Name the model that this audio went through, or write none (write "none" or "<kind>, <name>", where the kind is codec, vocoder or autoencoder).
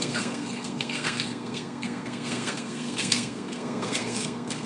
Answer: codec, SNAC